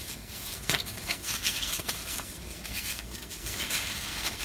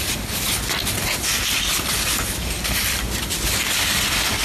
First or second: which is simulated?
first